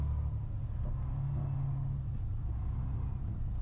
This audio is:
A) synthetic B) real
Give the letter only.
B